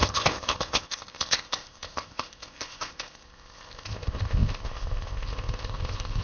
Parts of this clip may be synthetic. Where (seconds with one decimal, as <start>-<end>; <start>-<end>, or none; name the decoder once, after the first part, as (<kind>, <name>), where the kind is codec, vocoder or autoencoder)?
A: 0.0-6.2 (codec, ZipCodec)

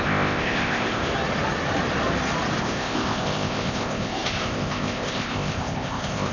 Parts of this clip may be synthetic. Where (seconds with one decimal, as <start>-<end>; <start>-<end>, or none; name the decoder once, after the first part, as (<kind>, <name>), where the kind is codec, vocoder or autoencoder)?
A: 0.0-1.1 (codec, ZipCodec); 2.6-6.3

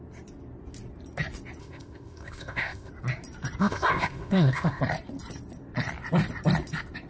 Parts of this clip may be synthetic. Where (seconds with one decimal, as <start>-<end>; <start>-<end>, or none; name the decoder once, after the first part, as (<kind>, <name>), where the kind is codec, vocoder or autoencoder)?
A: 1.6-2.9 (codec, ZipCodec); 3.6-4.8

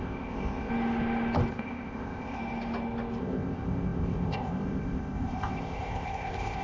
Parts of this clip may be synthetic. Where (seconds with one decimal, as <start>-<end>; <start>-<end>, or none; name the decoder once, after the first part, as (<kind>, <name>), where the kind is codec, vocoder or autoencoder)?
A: 0.0-0.7 (codec, ZipCodec); 1.5-2.4; 3.2-6.6

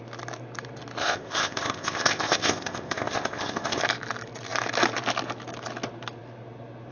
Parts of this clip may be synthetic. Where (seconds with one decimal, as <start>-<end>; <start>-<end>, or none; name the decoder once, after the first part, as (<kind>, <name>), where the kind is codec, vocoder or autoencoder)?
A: 1.0-3.8 (codec, ZipCodec)

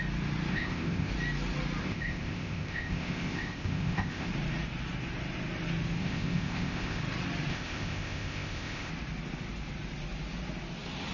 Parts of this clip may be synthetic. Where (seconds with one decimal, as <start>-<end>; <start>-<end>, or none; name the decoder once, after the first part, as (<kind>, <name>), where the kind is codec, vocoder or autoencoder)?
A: 0.5-1.1 (codec, ZipCodec); 1.8-4.3; 6.0-7.0; 7.5-8.9

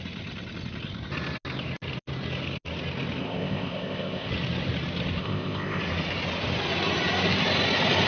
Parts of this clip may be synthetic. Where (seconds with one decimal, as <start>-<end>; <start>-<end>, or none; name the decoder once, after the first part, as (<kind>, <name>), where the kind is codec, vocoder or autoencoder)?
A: 3.2-4.3 (codec, ZipCodec); 5.2-5.8

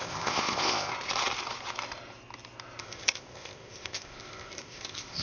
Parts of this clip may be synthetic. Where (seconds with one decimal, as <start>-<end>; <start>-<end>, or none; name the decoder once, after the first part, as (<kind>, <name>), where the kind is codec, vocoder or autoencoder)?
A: 0.0-0.9 (codec, ZipCodec); 2.8-5.2